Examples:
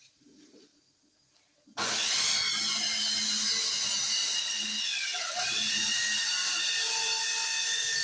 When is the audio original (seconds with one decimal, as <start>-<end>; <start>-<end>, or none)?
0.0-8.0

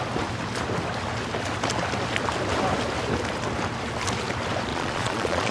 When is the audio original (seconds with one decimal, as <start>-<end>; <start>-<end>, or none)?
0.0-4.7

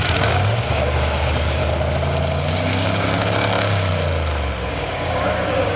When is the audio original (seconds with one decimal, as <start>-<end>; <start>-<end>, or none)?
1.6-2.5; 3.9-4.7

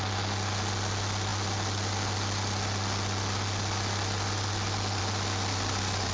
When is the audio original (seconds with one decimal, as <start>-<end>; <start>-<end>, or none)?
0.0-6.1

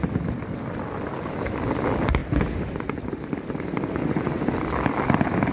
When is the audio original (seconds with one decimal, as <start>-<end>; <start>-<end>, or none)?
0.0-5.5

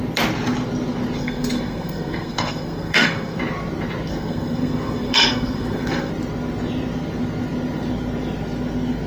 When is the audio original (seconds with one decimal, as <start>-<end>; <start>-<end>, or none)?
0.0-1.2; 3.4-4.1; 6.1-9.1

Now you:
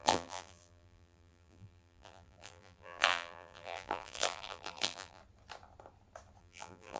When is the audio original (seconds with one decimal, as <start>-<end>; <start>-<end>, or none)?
5.2-6.4

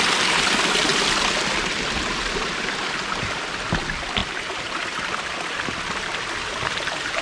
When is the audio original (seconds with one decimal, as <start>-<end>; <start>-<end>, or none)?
0.0-4.2; 4.7-7.2